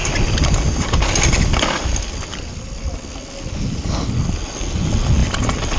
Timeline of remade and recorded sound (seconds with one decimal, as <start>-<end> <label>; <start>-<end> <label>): 0.0-5.8 recorded